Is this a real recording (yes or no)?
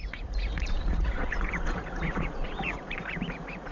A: no